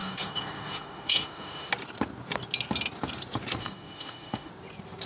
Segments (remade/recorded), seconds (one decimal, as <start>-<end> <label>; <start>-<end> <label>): 0.0-1.7 remade; 1.7-3.6 recorded; 3.6-4.5 remade; 4.5-5.1 recorded